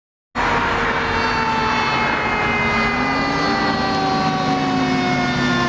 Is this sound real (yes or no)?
yes